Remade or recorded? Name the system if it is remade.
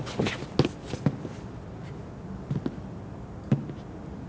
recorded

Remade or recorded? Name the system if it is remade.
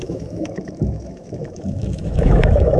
remade, autoencoder, DAC-VAE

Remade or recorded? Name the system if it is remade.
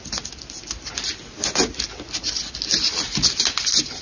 recorded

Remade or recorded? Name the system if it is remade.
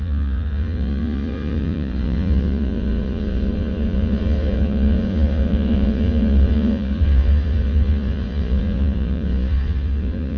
remade, vocoder, Vocos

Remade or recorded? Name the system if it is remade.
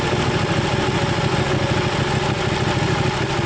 recorded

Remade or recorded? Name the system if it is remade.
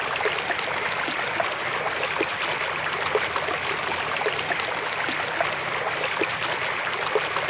recorded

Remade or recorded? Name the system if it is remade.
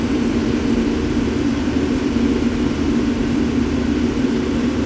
recorded